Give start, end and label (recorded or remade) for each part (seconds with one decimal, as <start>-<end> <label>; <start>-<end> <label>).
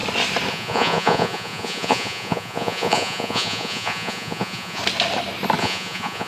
0.0-0.5 recorded; 0.5-4.8 remade; 4.8-5.6 recorded; 5.6-6.3 remade